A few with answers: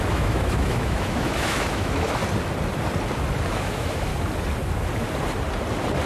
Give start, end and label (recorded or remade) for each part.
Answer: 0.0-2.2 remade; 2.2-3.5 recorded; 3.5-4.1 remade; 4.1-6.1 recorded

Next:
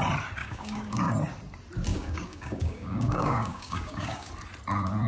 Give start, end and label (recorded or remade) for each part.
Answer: 0.0-0.4 recorded; 0.4-1.1 remade; 1.1-1.9 recorded; 1.9-4.3 remade; 4.3-5.1 recorded